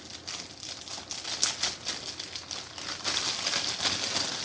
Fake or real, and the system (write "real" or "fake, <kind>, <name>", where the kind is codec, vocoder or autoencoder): real